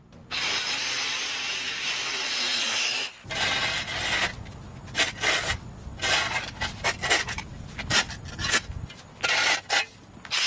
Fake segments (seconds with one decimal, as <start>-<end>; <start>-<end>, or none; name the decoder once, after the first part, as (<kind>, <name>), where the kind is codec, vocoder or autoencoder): none

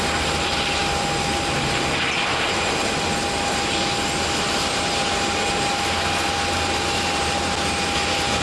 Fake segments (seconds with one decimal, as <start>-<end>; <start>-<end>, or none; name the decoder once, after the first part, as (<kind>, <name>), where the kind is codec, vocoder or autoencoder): none

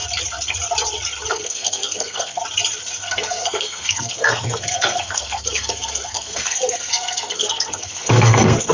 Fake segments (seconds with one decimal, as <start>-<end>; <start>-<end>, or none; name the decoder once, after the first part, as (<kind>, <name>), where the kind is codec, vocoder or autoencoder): 1.3-2.4 (codec, SNAC); 3.0-8.7

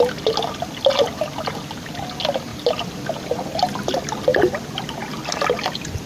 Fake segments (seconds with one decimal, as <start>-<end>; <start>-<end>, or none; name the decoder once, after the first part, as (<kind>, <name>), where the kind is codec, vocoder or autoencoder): none